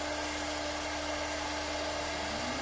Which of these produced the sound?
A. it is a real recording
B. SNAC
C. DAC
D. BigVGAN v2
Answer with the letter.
A